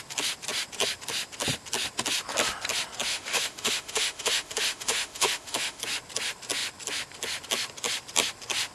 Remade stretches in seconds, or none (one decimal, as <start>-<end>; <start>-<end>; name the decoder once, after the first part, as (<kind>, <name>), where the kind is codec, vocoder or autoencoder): 3.1-5.8 (autoencoder, DAC-VAE)